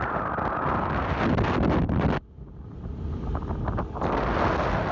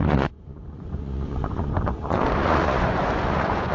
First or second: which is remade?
second